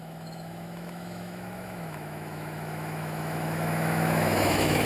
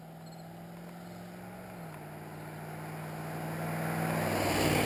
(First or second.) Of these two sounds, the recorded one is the second